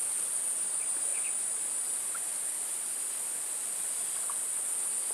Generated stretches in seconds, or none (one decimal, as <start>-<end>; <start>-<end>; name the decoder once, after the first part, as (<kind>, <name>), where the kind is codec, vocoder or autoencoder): none